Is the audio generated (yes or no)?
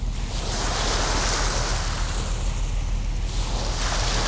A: no